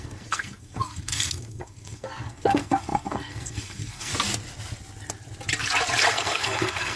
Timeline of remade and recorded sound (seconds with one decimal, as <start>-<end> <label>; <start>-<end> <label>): 0.0-4.1 remade; 4.1-6.1 recorded; 6.1-7.0 remade